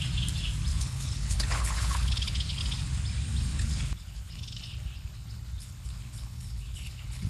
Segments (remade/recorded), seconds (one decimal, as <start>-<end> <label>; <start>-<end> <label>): 0.0-0.7 recorded; 0.7-2.6 remade; 2.6-3.5 recorded; 3.5-7.3 remade